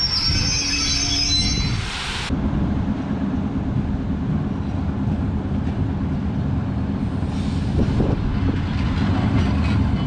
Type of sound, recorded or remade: recorded